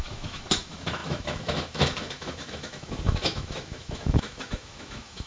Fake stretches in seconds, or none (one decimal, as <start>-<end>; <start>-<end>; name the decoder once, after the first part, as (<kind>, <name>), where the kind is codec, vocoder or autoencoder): 0.0-5.3 (autoencoder, DAC-VAE)